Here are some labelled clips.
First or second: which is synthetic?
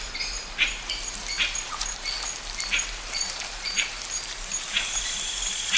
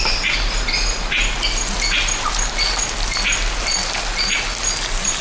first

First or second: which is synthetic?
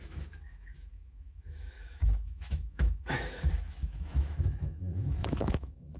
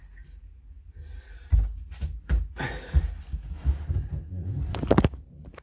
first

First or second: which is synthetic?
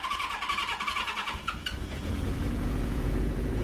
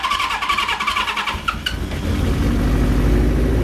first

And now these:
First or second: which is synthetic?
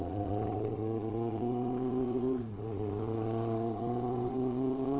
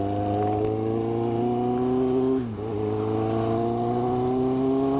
first